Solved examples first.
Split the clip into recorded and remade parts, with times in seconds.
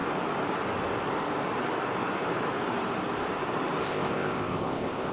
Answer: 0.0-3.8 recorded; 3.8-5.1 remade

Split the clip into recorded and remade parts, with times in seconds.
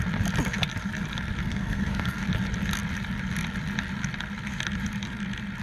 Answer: 0.0-1.4 recorded; 1.4-2.2 remade; 2.2-5.6 recorded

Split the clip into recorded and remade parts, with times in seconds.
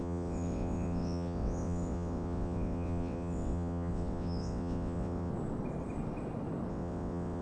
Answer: 0.0-5.3 remade; 5.3-6.7 recorded; 6.7-7.4 remade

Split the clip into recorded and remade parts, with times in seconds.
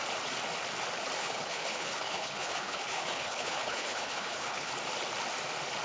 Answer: 0.0-1.2 recorded; 1.2-4.7 remade; 4.7-5.8 recorded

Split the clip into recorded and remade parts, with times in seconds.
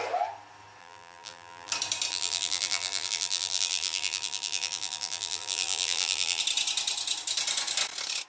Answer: 0.0-0.8 recorded; 0.8-1.7 remade; 1.7-2.1 recorded; 2.1-6.4 remade; 6.4-8.3 recorded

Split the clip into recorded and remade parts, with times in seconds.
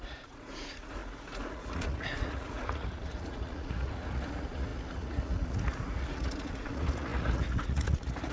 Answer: 0.0-8.3 remade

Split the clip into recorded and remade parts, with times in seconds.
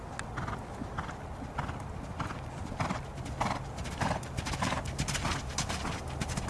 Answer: 0.0-6.5 recorded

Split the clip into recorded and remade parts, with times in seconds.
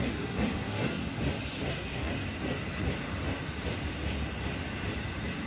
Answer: 0.0-1.0 remade; 1.0-1.7 recorded; 1.7-2.1 remade; 2.1-5.5 recorded